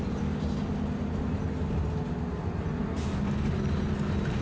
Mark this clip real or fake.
real